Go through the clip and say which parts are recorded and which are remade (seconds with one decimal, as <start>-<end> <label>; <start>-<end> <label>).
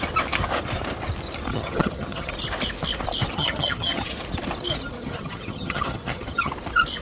0.0-1.5 recorded; 1.5-2.3 remade; 2.3-3.3 recorded; 3.3-4.1 remade; 4.1-5.0 recorded; 5.0-6.5 remade; 6.5-7.0 recorded